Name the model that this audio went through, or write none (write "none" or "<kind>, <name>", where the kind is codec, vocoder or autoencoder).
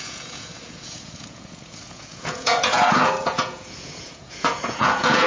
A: vocoder, Vocos